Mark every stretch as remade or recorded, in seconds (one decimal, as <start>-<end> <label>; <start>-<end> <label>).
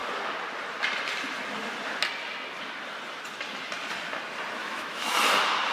0.0-4.6 recorded; 4.6-5.2 remade; 5.2-5.7 recorded